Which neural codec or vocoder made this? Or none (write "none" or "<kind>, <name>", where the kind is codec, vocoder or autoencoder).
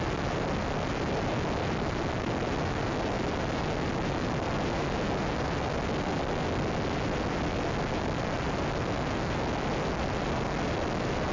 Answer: none